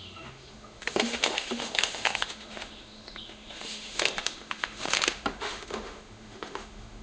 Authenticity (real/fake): fake